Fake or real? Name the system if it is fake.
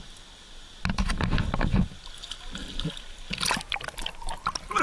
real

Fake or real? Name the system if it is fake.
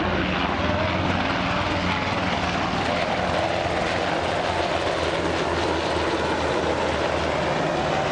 real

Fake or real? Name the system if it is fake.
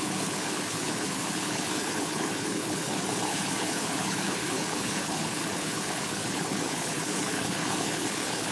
fake, codec, HILCodec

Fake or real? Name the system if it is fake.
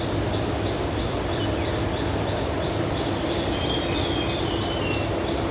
real